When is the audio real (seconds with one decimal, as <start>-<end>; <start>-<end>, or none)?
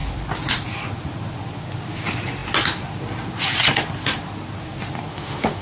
0.0-5.1